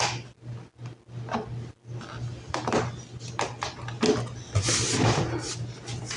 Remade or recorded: recorded